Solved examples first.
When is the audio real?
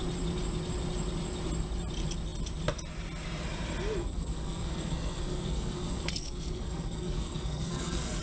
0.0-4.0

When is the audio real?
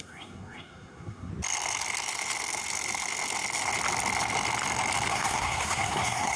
1.3-5.1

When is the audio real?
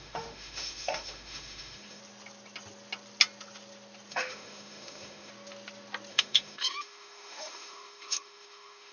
2.0-4.1; 5.3-6.1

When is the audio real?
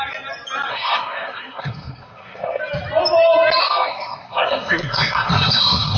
0.0-0.7; 2.6-3.6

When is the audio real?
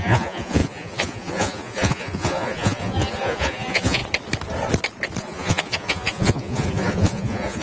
4.0-5.2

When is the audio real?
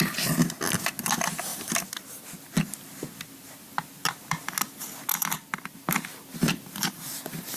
0.0-1.5; 3.0-5.1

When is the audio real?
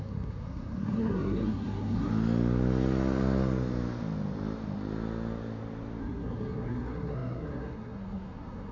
2.1-6.0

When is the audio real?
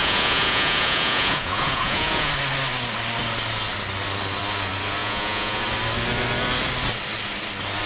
2.3-5.0; 5.6-7.9